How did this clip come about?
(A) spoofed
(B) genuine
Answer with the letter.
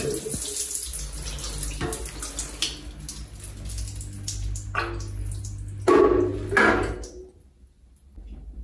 B